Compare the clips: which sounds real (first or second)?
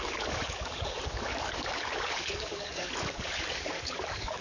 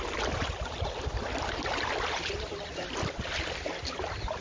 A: second